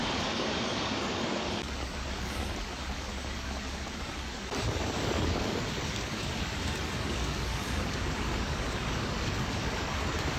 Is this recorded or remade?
remade